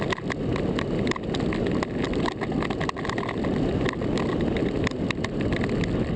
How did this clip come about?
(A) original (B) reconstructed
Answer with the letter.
A